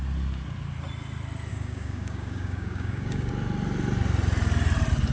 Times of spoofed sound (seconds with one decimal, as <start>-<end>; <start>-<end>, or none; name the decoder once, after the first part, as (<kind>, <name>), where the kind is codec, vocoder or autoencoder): 1.5-3.3 (codec, DAC)